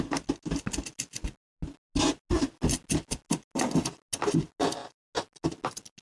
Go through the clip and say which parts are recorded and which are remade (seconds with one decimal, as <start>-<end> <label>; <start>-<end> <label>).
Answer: 0.0-6.0 recorded